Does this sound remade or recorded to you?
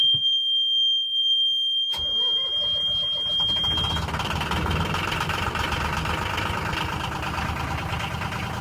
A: recorded